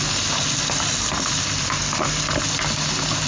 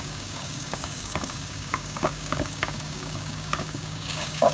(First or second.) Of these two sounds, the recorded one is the first